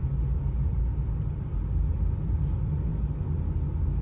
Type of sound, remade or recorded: recorded